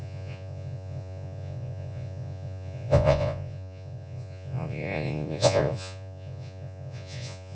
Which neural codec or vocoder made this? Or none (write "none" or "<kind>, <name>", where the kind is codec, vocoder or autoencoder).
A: vocoder, Vocos